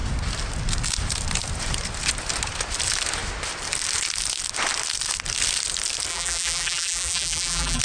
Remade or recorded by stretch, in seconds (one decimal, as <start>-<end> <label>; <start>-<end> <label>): 0.0-6.1 recorded; 6.1-7.8 remade